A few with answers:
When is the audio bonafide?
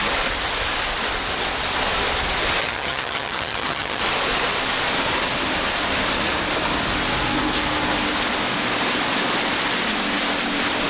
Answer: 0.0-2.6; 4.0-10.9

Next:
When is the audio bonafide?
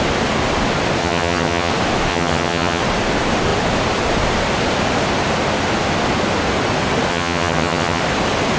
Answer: 0.0-1.0; 1.7-2.1; 2.8-7.1; 8.0-8.6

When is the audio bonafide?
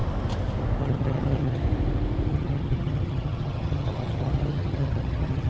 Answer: 0.0-0.8; 1.6-2.3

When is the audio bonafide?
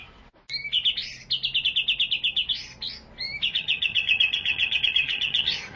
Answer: 0.0-3.5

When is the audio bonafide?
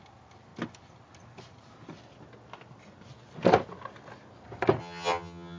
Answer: 0.0-4.8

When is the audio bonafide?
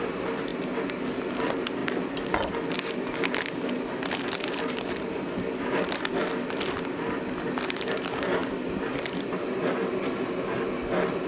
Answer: 0.0-11.3